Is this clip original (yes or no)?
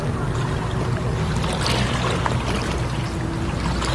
yes